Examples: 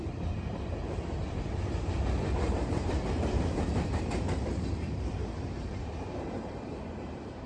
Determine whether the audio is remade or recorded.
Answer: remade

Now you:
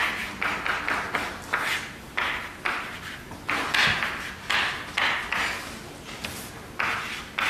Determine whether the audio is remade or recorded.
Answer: recorded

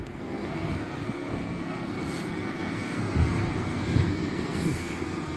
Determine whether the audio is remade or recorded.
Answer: remade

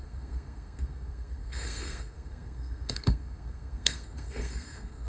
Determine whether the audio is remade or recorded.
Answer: remade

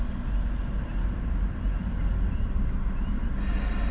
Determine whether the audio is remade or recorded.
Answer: recorded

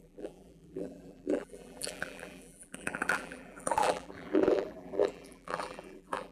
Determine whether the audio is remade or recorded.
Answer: remade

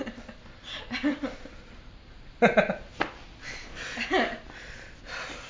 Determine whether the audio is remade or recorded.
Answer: recorded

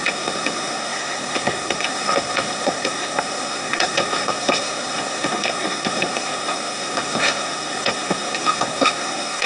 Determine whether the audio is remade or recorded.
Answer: remade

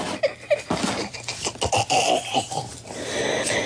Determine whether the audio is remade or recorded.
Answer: recorded